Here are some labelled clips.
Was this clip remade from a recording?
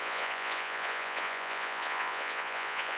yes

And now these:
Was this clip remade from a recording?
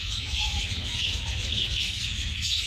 yes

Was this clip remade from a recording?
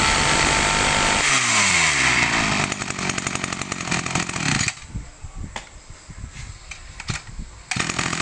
no